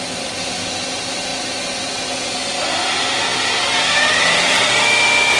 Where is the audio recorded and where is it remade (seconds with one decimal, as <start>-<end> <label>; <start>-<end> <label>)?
0.0-5.4 recorded